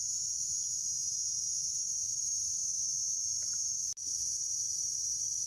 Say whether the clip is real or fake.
real